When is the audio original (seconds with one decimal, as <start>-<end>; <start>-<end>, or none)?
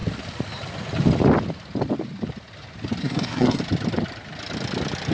0.0-3.0; 3.6-5.1